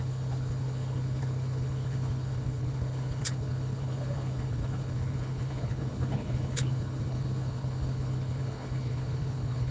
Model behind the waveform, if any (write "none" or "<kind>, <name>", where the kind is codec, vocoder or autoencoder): codec, HILCodec